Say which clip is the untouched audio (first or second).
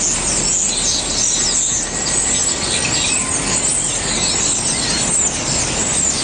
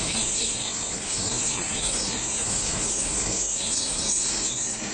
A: first